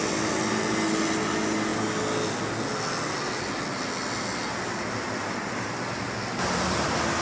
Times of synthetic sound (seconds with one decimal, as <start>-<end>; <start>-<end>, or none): none